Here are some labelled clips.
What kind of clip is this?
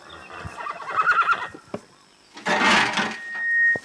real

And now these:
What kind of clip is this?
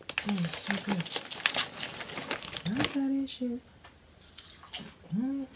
real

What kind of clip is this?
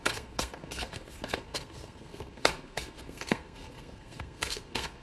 fake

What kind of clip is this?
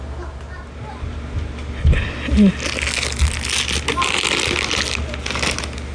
real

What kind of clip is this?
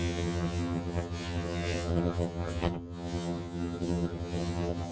fake